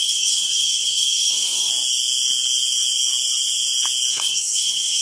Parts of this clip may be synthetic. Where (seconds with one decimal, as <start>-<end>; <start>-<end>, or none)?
0.0-1.7; 4.1-5.0